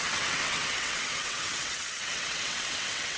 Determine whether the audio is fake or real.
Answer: fake